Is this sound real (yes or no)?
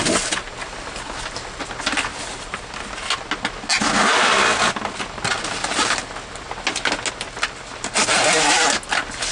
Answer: yes